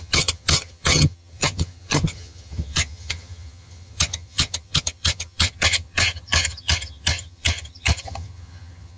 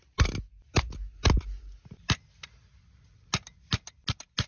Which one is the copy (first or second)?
first